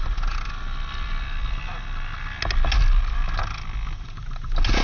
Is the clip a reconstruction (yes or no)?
no